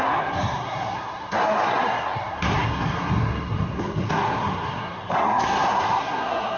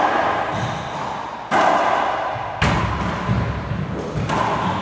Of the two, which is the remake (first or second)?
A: first